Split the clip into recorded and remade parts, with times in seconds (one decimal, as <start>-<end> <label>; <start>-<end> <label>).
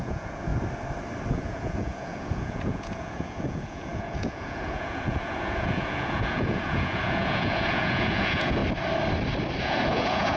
0.0-0.5 remade; 0.5-1.3 recorded; 1.3-8.6 remade; 8.6-9.6 recorded; 9.6-10.4 remade